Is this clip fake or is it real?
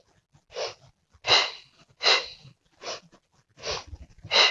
real